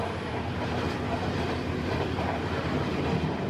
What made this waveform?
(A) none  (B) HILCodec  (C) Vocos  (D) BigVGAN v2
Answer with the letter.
A